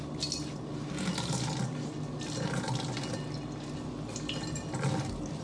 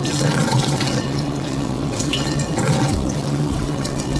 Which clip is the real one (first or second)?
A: first